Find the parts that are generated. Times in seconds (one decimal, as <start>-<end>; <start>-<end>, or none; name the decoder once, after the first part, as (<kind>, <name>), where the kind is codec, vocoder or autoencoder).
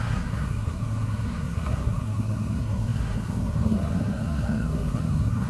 0.0-5.5 (codec, SNAC)